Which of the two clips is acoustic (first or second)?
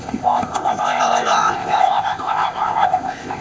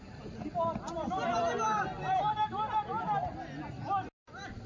second